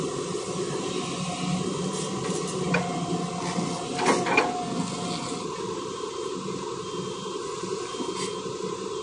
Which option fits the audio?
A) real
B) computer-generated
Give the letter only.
A